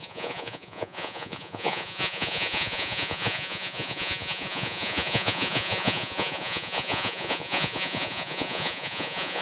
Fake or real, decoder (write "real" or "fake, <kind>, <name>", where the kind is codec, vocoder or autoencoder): fake, vocoder, Vocos